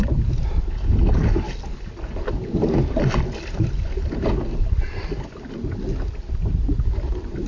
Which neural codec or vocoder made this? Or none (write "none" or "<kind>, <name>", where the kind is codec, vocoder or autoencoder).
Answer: none